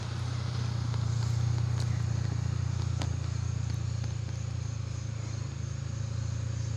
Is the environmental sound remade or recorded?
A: recorded